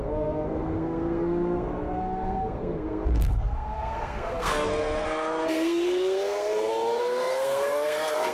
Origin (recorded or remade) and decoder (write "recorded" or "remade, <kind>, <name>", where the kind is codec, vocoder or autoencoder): remade, codec, SNAC